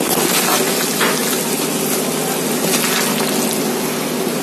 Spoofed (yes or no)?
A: no